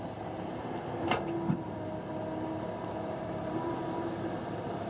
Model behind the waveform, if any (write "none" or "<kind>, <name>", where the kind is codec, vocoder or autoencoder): none